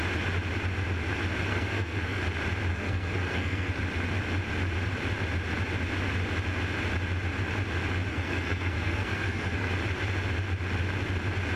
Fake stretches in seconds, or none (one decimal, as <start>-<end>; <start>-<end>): 1.5-2.2; 2.7-3.8; 8.1-9.7